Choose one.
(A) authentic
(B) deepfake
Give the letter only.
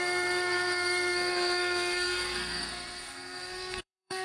B